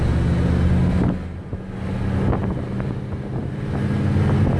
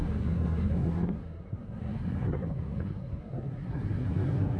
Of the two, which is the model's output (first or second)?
second